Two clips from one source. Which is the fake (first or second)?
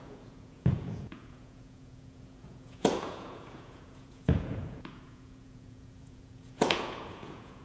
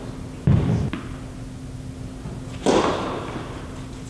first